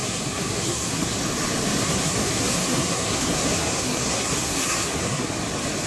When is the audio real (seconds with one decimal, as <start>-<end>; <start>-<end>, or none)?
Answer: 1.1-1.8; 5.3-5.9